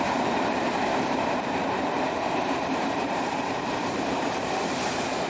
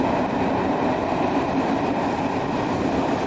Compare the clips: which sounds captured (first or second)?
second